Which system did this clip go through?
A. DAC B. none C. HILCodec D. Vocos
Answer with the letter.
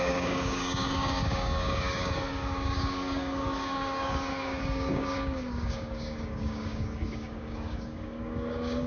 A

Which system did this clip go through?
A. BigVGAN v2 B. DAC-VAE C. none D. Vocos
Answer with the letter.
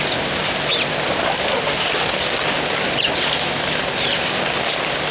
C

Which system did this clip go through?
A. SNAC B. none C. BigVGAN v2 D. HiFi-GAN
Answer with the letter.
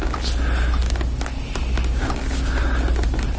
B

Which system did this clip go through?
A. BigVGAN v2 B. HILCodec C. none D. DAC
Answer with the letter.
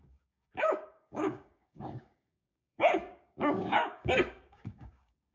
D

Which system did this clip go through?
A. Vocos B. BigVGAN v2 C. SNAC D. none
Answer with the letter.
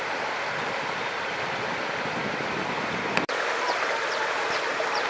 B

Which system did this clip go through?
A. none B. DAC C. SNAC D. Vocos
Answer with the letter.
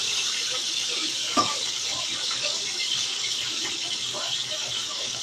B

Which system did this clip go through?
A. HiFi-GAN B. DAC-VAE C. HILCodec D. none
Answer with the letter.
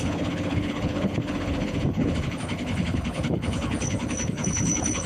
C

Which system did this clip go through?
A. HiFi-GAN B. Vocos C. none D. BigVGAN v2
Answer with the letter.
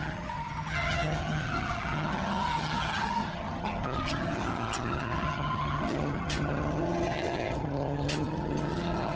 A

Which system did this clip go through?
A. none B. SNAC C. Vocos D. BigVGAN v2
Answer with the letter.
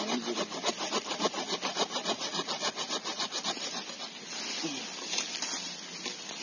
A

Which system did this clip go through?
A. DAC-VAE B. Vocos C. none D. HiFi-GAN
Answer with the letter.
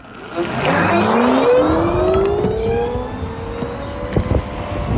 C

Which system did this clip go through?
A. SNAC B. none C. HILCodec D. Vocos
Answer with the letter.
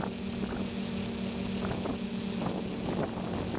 B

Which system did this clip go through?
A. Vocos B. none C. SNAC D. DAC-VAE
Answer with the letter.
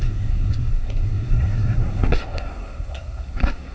C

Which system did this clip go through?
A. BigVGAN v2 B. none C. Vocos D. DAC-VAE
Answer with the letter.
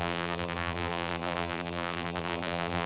A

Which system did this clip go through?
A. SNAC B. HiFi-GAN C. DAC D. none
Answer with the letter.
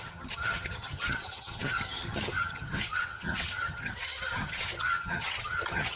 B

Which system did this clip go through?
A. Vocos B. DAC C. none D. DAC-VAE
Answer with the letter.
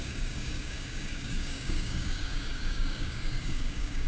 B